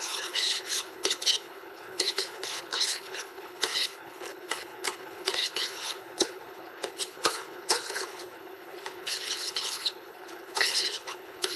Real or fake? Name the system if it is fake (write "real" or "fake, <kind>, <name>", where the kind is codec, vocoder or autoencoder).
fake, codec, HILCodec